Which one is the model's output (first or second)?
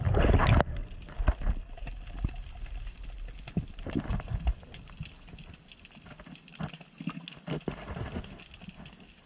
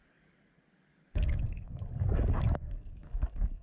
second